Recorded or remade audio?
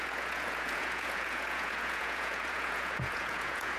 remade